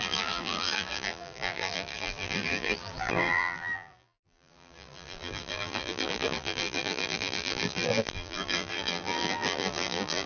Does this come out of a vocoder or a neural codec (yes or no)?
yes